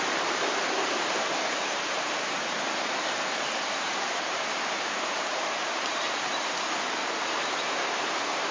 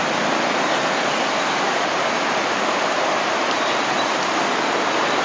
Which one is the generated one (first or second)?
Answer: first